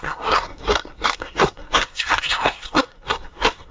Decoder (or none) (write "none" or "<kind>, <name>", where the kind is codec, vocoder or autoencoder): codec, SNAC